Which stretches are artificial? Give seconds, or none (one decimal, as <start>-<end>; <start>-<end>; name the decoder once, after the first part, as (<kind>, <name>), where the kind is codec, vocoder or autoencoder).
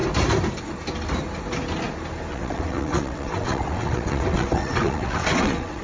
2.3-5.8 (vocoder, WaveNeXt)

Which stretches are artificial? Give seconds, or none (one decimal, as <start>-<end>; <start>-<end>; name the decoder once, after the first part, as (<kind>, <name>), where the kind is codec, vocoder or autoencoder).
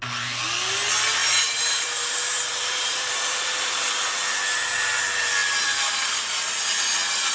1.2-3.9 (vocoder, BigVGAN v2)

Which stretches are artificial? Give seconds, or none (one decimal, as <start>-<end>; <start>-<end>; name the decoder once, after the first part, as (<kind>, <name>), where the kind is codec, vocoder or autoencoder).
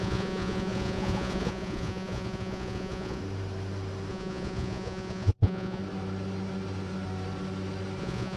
0.0-3.2 (vocoder, Vocos); 4.1-5.8; 8.0-8.4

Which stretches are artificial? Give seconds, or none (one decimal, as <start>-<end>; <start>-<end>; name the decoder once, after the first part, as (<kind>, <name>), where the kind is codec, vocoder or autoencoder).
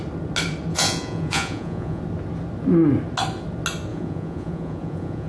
0.7-2.0 (vocoder, Vocos); 3.9-5.3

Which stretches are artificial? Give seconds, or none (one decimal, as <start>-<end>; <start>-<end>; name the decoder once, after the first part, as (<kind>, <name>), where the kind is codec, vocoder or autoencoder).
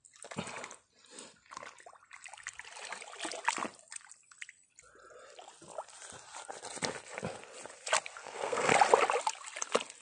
8.2-8.7 (codec, SNAC)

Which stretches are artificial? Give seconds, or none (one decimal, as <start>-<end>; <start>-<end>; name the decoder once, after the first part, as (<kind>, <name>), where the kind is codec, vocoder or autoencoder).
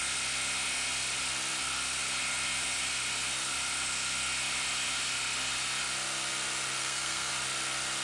6.8-7.3 (codec, SNAC)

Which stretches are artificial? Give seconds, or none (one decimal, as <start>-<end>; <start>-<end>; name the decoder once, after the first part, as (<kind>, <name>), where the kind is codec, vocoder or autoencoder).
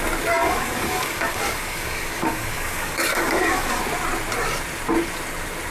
0.4-3.8 (codec, DAC)